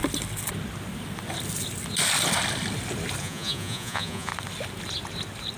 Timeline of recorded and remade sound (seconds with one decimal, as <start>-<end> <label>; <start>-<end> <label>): 0.0-3.2 recorded; 3.2-4.3 remade; 4.3-5.6 recorded